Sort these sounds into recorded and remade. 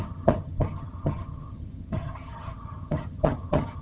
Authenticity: remade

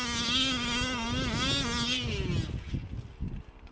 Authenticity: recorded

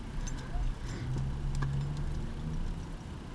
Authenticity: recorded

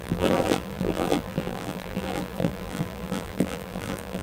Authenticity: remade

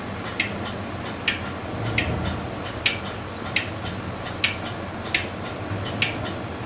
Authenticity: recorded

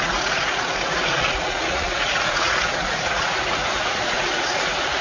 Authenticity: remade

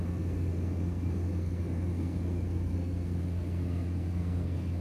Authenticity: remade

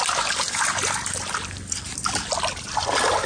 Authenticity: recorded